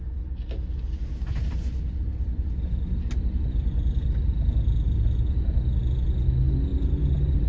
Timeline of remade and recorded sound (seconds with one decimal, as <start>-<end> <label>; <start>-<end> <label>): 0.0-6.7 recorded; 6.7-7.5 remade